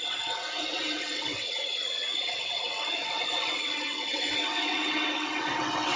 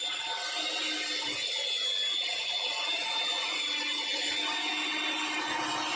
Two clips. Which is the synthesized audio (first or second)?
first